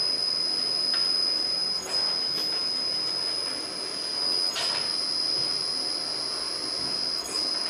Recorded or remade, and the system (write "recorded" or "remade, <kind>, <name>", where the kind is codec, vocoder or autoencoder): recorded